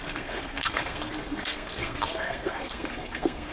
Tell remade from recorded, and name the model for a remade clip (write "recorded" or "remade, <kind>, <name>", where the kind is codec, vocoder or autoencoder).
remade, codec, SNAC